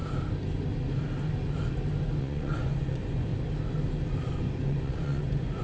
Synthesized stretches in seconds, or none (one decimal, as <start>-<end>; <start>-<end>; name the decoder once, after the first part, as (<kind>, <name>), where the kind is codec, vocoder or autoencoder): 2.2-3.3 (vocoder, Vocos); 4.3-5.6